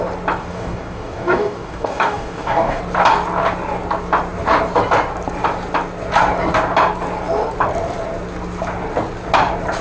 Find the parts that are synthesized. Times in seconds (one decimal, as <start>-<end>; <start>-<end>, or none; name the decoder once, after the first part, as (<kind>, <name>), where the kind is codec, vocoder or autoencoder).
0.4-2.8 (codec, DAC)